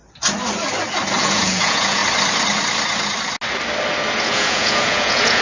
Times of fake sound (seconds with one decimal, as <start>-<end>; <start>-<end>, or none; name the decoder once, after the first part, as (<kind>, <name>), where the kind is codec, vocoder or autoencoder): 1.2-2.0 (vocoder, Vocos); 4.2-5.4